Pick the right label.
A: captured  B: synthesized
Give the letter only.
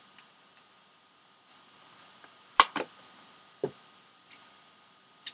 A